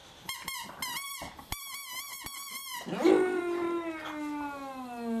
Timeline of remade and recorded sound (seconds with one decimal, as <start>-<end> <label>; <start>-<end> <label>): 0.0-0.8 remade; 0.8-2.7 recorded; 2.7-3.4 remade; 3.4-5.2 recorded

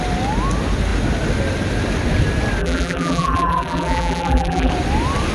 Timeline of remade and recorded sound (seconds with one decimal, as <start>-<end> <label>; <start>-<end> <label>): 0.0-2.6 recorded; 2.6-4.7 remade; 4.7-5.3 recorded

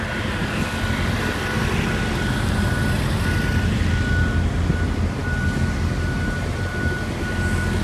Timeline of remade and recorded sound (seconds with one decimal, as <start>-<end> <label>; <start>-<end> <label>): 0.0-7.8 recorded

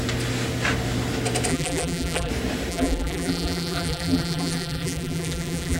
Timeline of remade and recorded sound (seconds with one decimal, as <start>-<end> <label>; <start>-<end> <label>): 0.0-1.5 recorded; 1.5-2.3 remade; 2.3-2.7 recorded; 2.7-5.8 remade

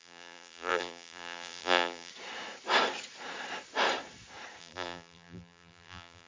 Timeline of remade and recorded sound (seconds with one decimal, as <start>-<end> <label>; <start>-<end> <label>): 0.0-2.1 remade; 2.1-4.6 recorded; 4.6-6.3 remade

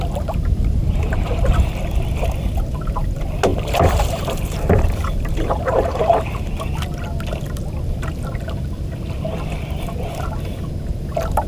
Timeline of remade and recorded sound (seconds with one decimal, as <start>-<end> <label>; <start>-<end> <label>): 0.0-0.8 recorded; 0.8-1.7 remade; 1.7-3.5 recorded; 3.5-6.5 remade; 6.5-11.5 recorded

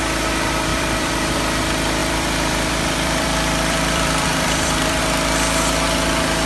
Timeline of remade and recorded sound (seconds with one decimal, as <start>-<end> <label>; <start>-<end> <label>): 0.0-0.7 recorded; 0.7-1.4 remade; 1.4-2.0 recorded; 2.0-5.0 remade; 5.0-6.5 recorded

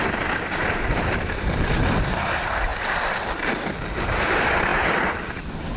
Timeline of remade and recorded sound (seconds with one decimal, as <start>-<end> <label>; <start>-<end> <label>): 0.0-5.8 remade